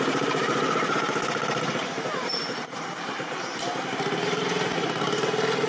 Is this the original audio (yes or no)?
no